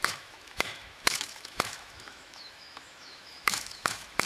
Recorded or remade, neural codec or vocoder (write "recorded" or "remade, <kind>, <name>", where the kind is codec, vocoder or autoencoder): remade, autoencoder, DAC-VAE